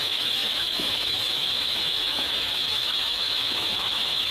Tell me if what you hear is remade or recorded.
remade